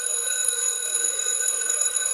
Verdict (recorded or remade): remade